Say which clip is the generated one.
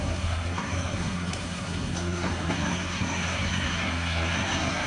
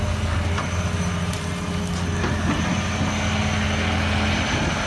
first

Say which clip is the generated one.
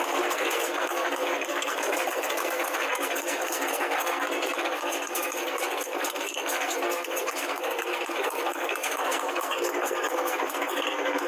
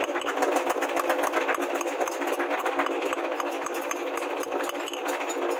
first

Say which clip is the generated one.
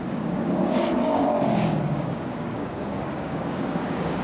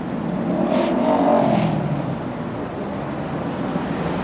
first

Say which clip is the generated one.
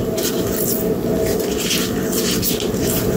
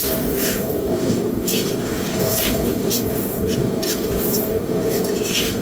second